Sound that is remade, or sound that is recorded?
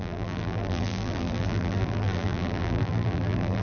remade